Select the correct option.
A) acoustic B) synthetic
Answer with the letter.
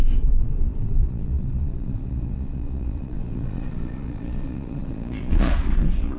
B